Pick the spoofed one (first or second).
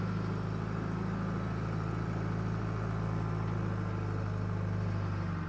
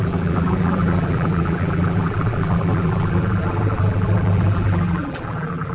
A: second